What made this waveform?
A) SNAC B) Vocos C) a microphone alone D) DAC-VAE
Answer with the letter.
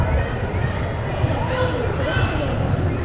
C